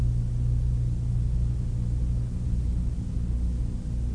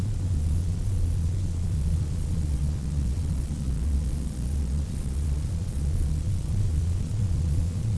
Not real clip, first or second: second